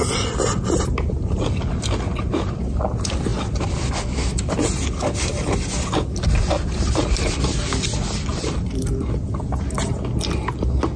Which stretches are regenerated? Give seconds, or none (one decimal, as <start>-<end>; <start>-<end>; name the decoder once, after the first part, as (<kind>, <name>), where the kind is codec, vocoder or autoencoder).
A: 8.3-8.9 (vocoder, BigVGAN v2)